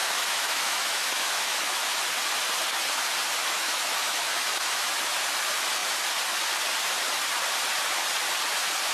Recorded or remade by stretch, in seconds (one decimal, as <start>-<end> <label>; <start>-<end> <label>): 0.0-2.0 remade; 2.0-3.4 recorded; 3.4-4.9 remade; 4.9-8.9 recorded